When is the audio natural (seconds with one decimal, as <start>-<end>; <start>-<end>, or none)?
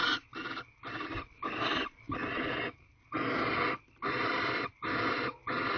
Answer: 0.0-5.8